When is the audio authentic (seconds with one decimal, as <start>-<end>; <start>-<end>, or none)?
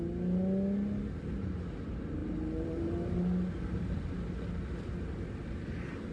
0.0-6.1